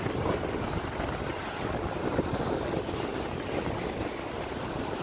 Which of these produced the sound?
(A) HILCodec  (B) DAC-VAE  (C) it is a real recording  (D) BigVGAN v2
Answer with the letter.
C